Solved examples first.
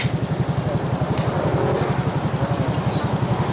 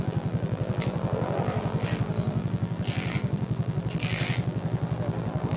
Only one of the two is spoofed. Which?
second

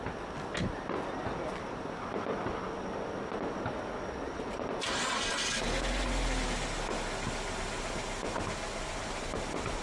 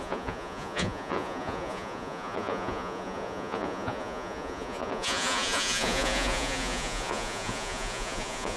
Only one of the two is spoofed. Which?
second